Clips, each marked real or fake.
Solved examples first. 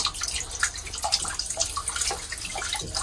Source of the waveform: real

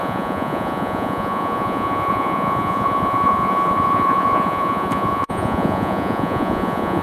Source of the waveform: fake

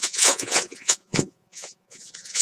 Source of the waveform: fake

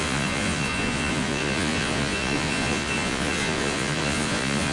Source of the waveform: fake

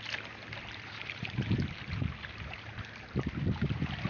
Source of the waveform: real